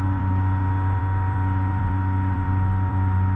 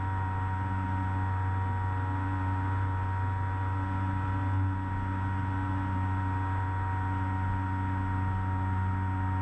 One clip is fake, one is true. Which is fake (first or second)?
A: first